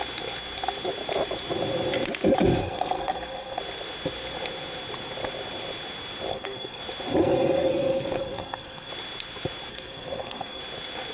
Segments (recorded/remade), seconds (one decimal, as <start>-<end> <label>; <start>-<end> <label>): 0.0-2.6 recorded; 2.6-3.6 remade; 3.6-6.3 recorded; 6.3-6.8 remade; 6.8-7.2 recorded; 7.2-8.9 remade; 8.9-9.7 recorded; 9.7-10.6 remade; 10.6-11.1 recorded